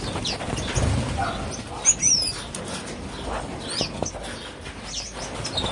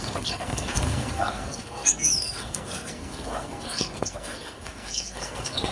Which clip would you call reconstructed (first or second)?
second